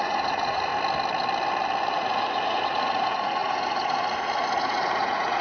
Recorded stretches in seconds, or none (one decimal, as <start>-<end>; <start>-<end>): 0.7-1.9